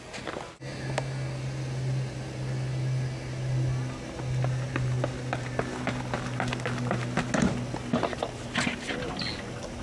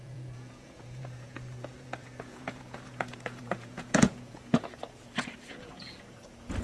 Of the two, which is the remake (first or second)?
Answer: second